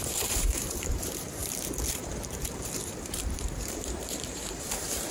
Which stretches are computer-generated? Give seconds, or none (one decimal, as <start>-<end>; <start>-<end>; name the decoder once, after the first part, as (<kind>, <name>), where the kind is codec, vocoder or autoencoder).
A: 0.0-1.4 (vocoder, BigVGAN v2); 1.9-5.1